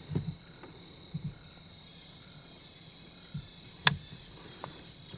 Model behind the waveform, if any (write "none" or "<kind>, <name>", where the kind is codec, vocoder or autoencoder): none